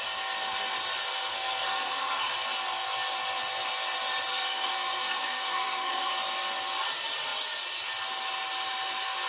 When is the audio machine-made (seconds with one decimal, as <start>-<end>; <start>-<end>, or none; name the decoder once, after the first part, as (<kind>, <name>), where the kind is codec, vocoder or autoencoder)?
1.1-2.3 (codec, SNAC); 4.3-6.1